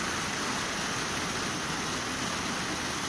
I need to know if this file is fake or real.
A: real